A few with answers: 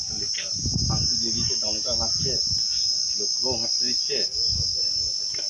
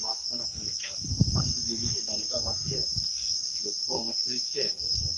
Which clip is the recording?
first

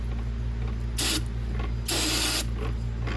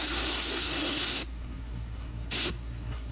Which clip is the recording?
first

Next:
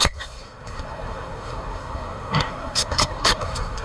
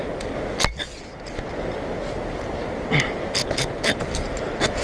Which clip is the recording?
second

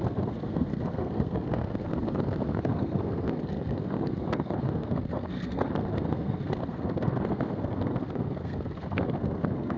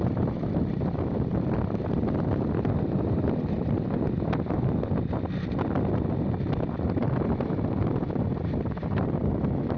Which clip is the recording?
second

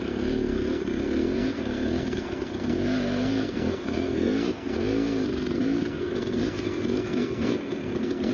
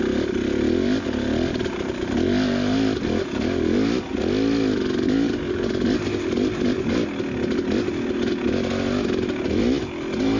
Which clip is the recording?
second